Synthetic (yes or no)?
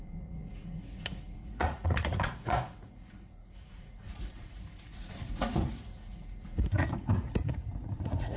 yes